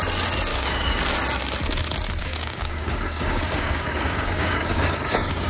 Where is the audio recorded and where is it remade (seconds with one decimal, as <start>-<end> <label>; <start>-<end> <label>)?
0.0-0.5 recorded; 0.5-1.0 remade; 1.0-2.2 recorded; 2.2-5.5 remade